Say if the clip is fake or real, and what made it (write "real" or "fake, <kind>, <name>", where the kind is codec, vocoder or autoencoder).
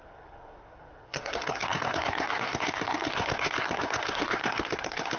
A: fake, codec, SNAC